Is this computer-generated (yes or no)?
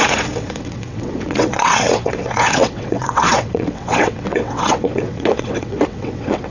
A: yes